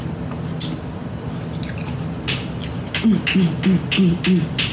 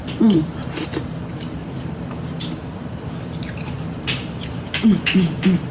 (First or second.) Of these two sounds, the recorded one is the first